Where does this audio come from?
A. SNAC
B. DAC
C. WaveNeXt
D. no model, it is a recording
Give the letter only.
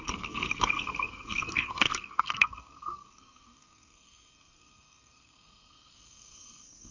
A